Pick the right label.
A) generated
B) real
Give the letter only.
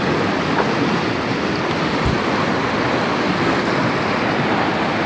B